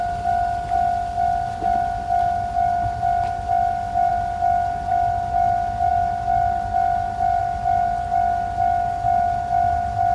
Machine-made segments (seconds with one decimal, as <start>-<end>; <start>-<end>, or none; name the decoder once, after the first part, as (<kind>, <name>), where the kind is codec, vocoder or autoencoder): none